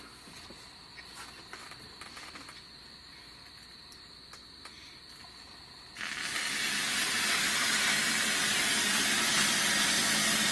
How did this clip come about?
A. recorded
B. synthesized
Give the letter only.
A